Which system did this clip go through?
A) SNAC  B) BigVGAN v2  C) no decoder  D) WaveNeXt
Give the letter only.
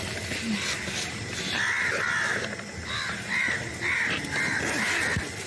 C